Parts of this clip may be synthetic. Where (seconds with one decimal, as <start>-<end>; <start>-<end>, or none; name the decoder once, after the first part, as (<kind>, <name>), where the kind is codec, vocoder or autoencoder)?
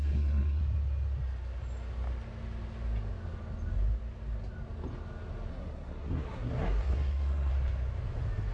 0.0-0.6 (codec, SNAC); 5.5-7.5